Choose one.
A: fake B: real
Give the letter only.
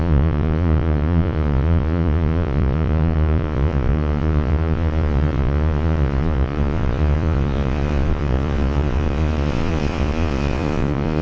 A